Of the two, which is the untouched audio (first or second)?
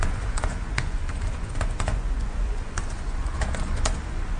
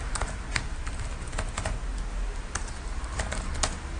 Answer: second